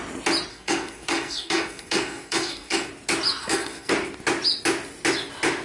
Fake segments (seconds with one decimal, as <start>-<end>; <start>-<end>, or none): 0.5-2.9; 3.4-3.9